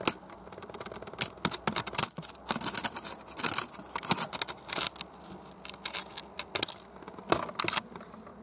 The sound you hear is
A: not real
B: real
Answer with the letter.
B